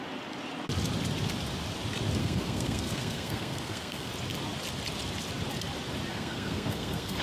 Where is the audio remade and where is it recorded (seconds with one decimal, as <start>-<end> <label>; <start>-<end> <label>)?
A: 0.0-2.2 recorded; 2.2-4.1 remade; 4.1-6.1 recorded; 6.1-7.2 remade